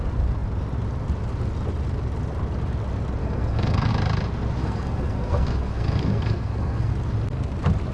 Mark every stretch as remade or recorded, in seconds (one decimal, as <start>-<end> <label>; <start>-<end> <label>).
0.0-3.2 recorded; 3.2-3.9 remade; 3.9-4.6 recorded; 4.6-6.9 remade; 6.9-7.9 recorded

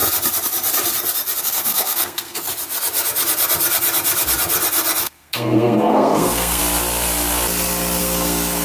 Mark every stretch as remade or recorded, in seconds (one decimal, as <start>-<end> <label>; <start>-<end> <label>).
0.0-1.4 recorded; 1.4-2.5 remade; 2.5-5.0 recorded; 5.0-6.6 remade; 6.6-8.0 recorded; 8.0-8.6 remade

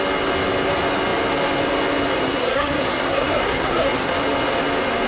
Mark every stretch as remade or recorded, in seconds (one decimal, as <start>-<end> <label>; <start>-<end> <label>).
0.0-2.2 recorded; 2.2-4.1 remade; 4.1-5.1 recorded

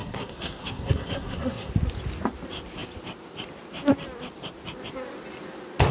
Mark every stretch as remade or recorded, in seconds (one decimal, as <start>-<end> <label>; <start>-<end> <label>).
0.0-1.7 remade; 1.7-5.9 recorded

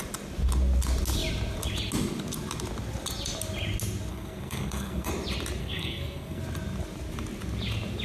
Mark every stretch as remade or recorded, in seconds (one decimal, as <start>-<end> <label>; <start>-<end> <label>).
0.0-4.1 recorded; 4.1-5.1 remade; 5.1-5.6 recorded; 5.6-6.4 remade; 6.4-8.0 recorded